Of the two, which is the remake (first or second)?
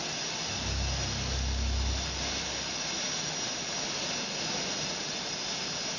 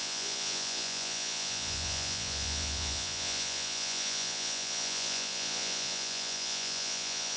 second